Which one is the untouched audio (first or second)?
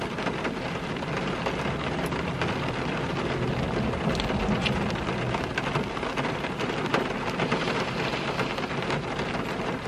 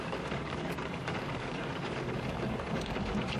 first